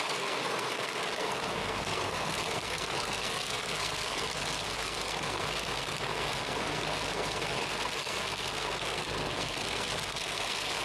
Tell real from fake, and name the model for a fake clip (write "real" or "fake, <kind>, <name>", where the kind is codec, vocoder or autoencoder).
fake, codec, SNAC